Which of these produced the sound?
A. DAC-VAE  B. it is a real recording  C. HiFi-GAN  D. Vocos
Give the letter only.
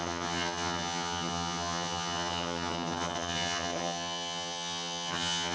C